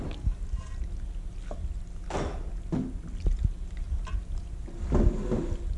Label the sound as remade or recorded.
recorded